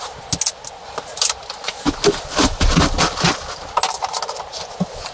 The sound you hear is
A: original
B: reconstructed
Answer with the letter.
A